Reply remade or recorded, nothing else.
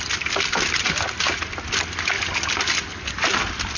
recorded